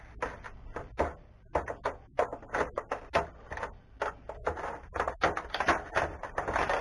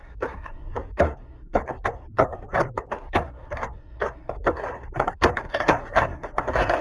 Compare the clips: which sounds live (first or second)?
first